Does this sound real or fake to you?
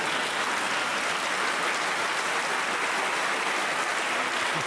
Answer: real